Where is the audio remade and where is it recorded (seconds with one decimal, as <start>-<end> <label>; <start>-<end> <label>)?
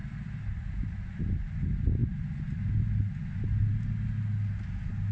0.0-5.1 recorded